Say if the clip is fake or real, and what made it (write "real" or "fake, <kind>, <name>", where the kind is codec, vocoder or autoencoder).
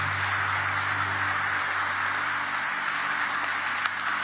real